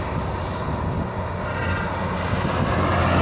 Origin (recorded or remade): recorded